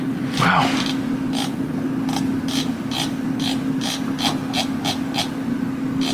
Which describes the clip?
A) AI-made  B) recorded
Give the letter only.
B